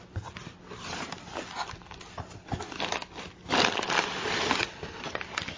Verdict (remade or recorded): recorded